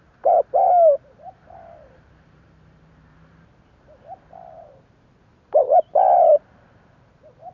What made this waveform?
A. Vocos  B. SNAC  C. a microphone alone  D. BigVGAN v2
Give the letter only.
D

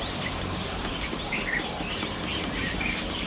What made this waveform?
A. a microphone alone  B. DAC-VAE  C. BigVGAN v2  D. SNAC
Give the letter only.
C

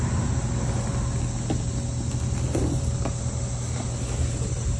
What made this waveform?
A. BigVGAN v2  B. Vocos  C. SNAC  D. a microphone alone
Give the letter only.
D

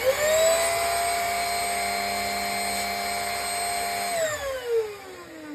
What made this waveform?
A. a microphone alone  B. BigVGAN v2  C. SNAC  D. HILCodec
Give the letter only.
A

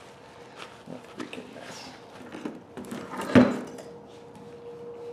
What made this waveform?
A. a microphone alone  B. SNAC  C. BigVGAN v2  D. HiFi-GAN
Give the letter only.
A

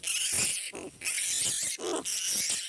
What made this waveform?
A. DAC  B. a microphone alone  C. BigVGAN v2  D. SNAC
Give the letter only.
B